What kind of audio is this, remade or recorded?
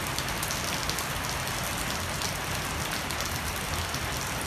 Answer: recorded